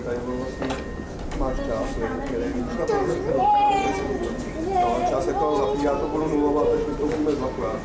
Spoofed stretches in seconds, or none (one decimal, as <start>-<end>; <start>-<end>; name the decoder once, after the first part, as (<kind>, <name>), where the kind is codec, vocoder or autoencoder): none